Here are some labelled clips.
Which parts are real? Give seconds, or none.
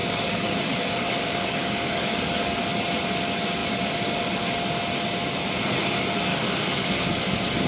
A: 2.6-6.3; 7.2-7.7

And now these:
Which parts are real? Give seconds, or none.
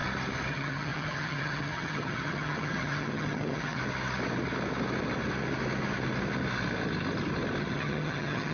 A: 0.0-0.5; 3.8-7.6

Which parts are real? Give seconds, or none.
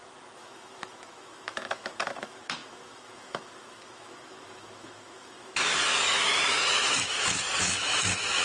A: none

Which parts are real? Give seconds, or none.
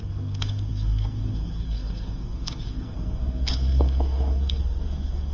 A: none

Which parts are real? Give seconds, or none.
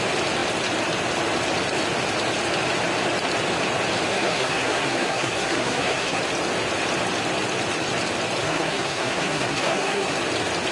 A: 0.0-4.1; 6.2-8.4; 10.2-10.7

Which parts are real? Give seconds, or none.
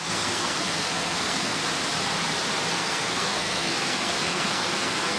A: 1.6-2.7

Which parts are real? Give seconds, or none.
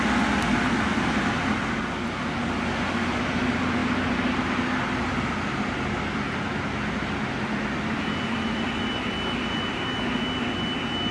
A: 0.0-11.1